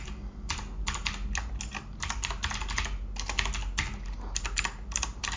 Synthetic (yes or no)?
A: no